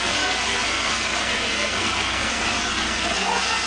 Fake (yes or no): yes